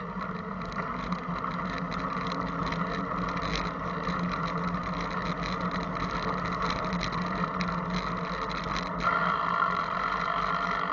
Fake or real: real